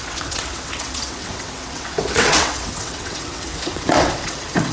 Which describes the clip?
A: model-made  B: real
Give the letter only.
A